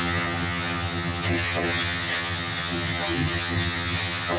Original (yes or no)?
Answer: no